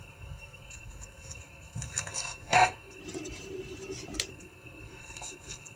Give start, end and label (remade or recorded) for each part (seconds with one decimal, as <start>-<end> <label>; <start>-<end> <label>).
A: 0.0-3.0 remade; 3.0-4.3 recorded; 4.3-5.8 remade